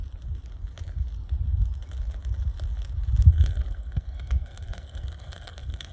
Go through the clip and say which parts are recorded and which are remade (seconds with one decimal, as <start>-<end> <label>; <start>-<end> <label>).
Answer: 0.0-3.3 recorded; 3.3-5.9 remade